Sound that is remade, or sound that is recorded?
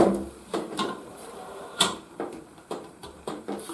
remade